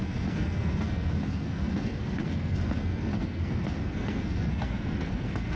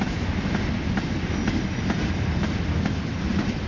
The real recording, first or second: second